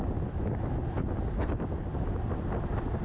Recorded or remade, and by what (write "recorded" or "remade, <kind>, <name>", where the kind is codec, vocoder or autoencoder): recorded